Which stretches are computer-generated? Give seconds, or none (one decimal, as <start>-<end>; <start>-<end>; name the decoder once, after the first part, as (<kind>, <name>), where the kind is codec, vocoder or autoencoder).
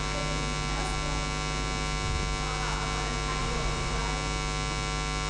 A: 3.4-4.0 (vocoder, Vocos)